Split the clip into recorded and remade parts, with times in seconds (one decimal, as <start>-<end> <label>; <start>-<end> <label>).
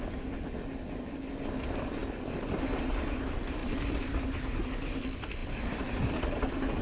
0.0-2.0 recorded; 2.0-2.6 remade; 2.6-3.6 recorded; 3.6-4.2 remade; 4.2-5.4 recorded; 5.4-6.0 remade; 6.0-6.8 recorded